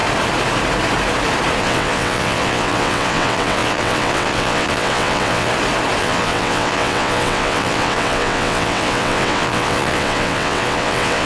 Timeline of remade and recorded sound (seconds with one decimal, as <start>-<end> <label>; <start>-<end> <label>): 0.0-1.6 recorded; 1.6-5.5 remade; 5.5-6.0 recorded; 6.0-11.3 remade